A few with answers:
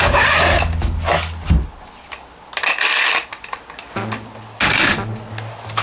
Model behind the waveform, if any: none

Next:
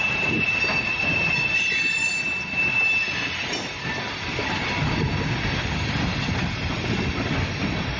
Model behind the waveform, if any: none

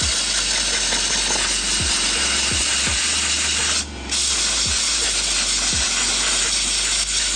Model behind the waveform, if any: none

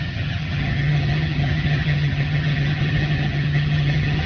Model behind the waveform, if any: vocoder, HiFi-GAN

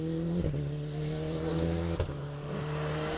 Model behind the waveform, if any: none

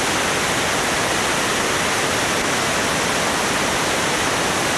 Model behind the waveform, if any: none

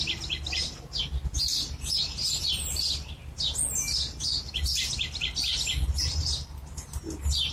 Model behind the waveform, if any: none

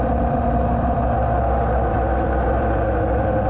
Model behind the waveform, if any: none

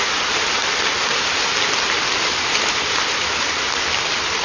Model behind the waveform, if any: none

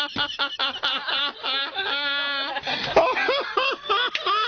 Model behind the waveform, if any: none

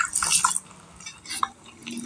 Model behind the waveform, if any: none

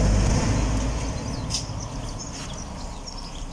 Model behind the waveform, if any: none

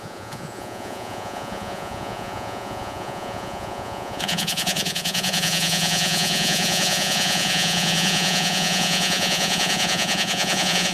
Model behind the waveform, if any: vocoder, Vocos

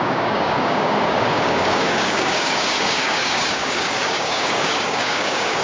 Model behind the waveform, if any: codec, DAC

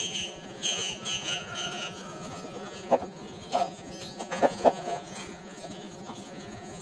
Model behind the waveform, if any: vocoder, Vocos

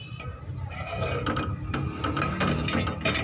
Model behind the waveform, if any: none